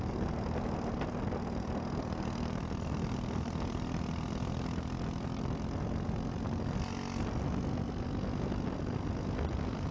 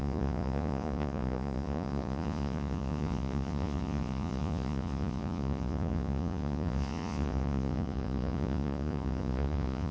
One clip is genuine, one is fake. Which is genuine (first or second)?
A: first